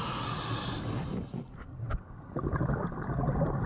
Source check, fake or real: real